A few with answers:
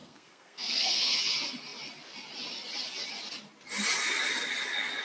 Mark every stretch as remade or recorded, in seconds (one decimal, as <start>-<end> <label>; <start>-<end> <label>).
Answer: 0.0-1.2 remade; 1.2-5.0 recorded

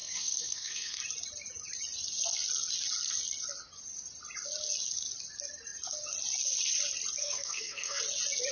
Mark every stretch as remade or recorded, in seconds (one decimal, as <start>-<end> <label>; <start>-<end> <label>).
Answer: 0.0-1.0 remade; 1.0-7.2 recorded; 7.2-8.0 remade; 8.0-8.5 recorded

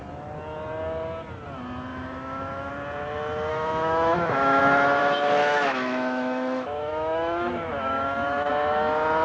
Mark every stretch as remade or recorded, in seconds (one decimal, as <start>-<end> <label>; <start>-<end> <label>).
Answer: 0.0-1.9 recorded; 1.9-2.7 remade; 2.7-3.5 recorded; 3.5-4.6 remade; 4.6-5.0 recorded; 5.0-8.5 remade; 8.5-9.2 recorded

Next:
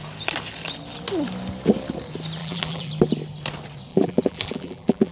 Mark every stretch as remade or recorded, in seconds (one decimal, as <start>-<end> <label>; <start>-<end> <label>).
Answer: 0.0-2.4 recorded; 2.4-2.9 remade; 2.9-3.9 recorded; 3.9-5.1 remade

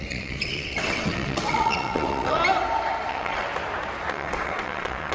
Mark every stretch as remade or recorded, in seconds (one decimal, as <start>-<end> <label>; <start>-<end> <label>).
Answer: 0.0-2.4 remade; 2.4-3.1 recorded; 3.1-3.5 remade; 3.5-4.1 recorded; 4.1-5.1 remade

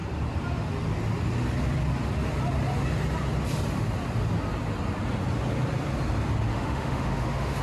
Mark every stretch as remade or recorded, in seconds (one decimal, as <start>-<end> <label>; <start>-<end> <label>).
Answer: 0.0-6.5 recorded; 6.5-7.6 remade

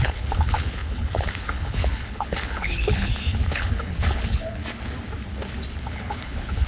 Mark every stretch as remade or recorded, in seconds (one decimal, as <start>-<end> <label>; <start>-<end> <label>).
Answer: 0.0-4.6 remade; 4.6-5.8 recorded; 5.8-6.7 remade